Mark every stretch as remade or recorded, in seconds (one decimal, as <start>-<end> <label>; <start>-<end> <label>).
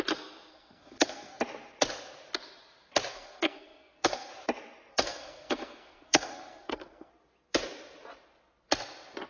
0.0-0.5 recorded; 0.5-1.4 remade; 1.4-3.1 recorded; 3.1-4.3 remade; 4.3-4.9 recorded; 4.9-7.1 remade; 7.1-9.3 recorded